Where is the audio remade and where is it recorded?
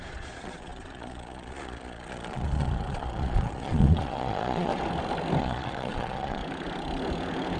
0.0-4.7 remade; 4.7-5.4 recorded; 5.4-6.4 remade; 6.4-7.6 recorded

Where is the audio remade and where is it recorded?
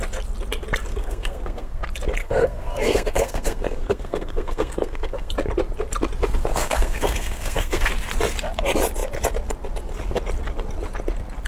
0.0-0.9 recorded; 0.9-1.8 remade; 1.8-2.2 recorded; 2.2-5.3 remade; 5.3-6.5 recorded; 6.5-7.9 remade; 7.9-11.5 recorded